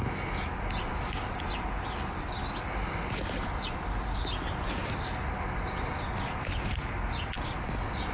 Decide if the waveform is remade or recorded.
recorded